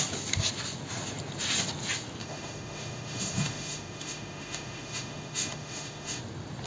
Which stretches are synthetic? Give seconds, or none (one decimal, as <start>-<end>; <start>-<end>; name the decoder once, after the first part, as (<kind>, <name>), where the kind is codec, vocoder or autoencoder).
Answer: 2.2-6.2 (autoencoder, DAC-VAE)

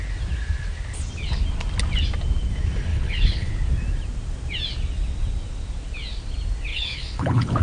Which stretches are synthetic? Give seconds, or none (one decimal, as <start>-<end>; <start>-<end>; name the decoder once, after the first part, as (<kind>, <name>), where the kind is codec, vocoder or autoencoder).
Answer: 2.9-3.5 (codec, HILCodec); 6.7-7.6

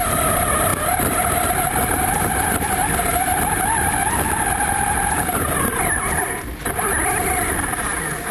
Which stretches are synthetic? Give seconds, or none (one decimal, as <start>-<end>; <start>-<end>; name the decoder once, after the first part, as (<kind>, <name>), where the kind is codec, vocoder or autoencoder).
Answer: none

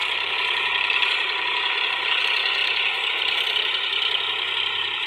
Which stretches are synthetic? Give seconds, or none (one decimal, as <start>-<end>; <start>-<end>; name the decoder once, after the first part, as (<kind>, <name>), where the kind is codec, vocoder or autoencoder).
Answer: 0.0-2.2 (vocoder, BigVGAN v2)

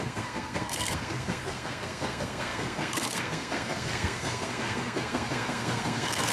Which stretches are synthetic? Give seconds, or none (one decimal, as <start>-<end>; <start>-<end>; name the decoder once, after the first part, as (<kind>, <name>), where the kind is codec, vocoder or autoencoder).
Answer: 0.0-6.3 (codec, SNAC)

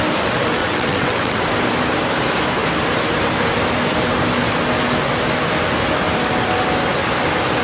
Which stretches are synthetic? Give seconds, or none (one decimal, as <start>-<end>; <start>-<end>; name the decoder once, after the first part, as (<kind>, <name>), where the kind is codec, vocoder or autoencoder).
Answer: 0.6-1.4 (vocoder, WaveNeXt)